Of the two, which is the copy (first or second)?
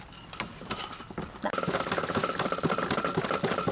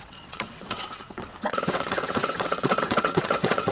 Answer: second